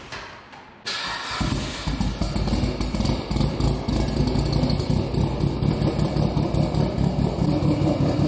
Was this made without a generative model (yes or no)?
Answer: yes